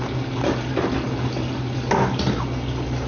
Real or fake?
real